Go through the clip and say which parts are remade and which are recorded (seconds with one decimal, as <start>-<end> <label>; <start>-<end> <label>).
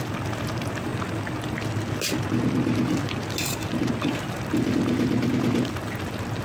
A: 0.0-6.4 recorded